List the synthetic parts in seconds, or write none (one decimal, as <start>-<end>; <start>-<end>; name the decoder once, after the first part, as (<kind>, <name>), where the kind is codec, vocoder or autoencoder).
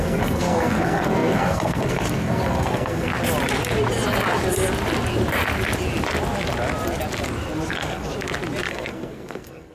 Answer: 0.0-3.1 (codec, SNAC); 7.7-8.1; 8.7-9.7